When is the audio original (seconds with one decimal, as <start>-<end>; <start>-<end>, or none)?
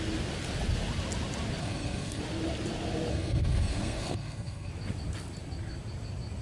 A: 0.0-1.6; 2.2-3.1; 4.7-6.4